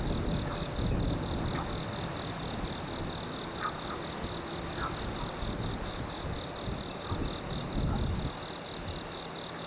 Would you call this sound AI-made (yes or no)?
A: no